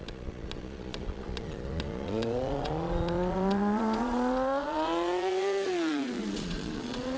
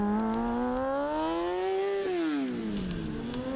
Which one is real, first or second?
second